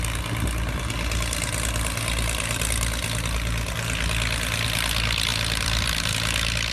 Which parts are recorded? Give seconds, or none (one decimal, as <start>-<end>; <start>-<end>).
0.0-5.3; 6.1-6.7